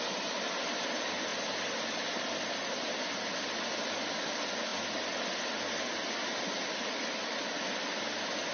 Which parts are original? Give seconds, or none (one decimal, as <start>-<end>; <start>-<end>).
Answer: 0.0-8.5